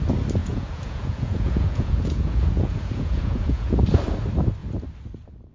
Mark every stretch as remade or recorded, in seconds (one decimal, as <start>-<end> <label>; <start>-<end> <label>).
0.0-0.4 recorded; 0.4-3.7 remade; 3.7-5.5 recorded